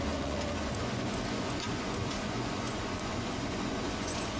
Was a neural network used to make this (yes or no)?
yes